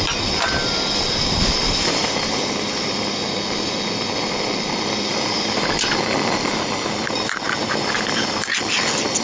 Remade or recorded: recorded